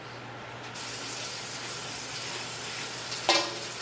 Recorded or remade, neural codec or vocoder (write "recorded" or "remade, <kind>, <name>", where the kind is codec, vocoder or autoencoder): recorded